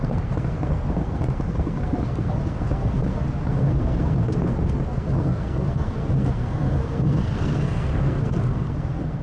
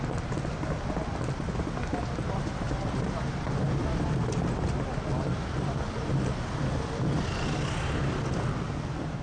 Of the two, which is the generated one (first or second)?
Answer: first